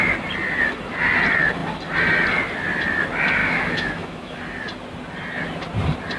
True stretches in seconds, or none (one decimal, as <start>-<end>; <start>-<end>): 0.0-3.4; 4.4-6.2